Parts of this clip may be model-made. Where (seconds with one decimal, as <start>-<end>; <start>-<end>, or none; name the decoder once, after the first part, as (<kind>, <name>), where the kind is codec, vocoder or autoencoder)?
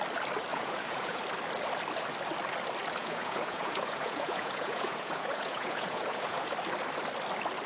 0.5-1.2 (vocoder, Vocos); 3.0-6.5